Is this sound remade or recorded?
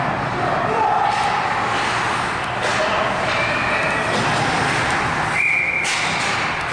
recorded